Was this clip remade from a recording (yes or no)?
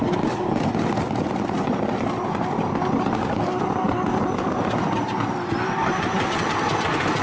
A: no